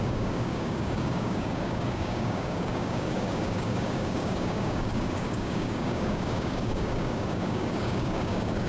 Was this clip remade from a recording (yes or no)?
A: yes